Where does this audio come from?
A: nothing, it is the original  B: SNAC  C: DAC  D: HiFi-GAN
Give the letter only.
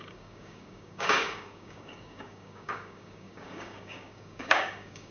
C